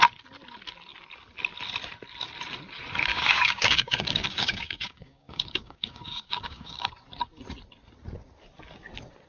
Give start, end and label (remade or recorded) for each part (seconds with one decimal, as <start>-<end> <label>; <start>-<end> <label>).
0.0-3.1 recorded; 3.1-6.9 remade; 6.9-9.3 recorded